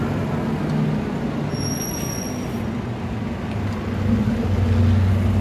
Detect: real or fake real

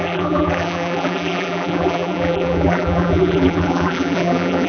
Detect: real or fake fake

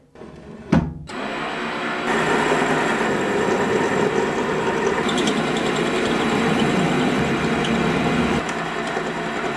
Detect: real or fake real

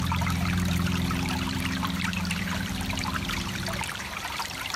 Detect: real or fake fake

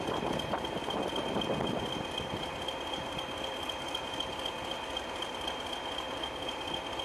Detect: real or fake fake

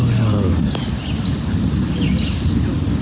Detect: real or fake real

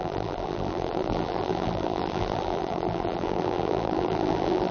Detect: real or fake fake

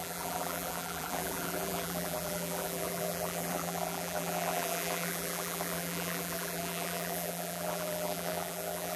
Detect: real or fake fake